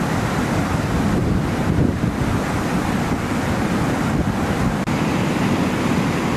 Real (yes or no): yes